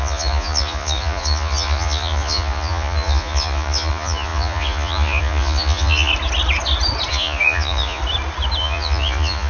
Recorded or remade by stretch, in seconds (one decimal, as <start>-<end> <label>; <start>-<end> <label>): 0.0-6.1 remade; 6.1-7.1 recorded; 7.1-8.0 remade; 8.0-8.6 recorded; 8.6-9.5 remade